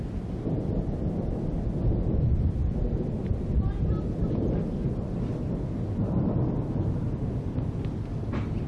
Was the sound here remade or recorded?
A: recorded